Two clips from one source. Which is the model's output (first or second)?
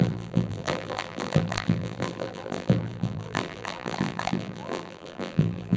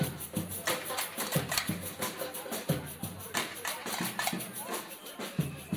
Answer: first